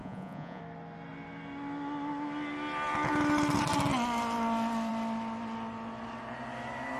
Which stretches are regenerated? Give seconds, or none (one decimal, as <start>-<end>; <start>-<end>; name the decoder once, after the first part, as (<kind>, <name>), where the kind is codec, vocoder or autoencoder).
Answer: 0.0-0.6 (vocoder, Vocos)